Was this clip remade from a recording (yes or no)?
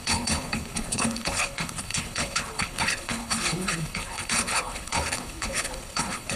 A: yes